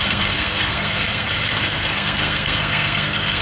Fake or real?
fake